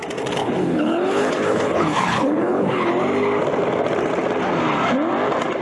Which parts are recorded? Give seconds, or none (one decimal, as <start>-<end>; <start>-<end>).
0.0-0.4; 2.9-5.6